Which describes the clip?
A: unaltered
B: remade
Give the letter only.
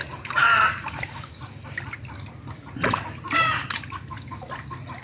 A